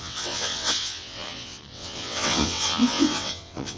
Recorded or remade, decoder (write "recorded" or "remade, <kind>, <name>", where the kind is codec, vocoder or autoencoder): remade, vocoder, WaveNeXt